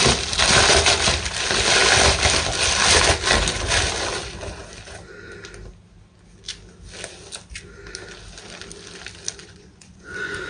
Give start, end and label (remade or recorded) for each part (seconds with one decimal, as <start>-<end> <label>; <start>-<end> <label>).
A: 0.0-9.4 recorded; 9.4-10.5 remade